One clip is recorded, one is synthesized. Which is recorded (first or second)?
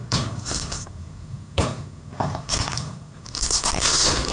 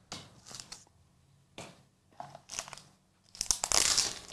second